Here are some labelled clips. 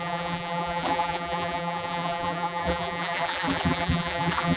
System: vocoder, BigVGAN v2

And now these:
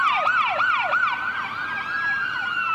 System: none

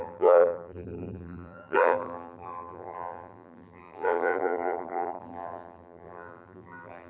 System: vocoder, BigVGAN v2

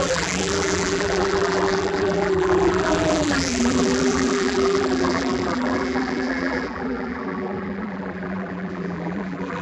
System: vocoder, BigVGAN v2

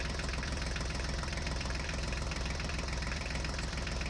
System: vocoder, BigVGAN v2